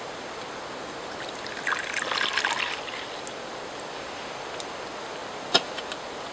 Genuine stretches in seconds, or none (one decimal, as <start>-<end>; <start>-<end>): 0.0-6.3